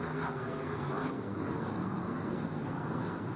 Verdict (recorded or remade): remade